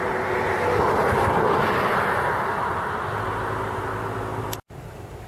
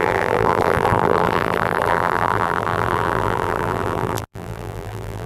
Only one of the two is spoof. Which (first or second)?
second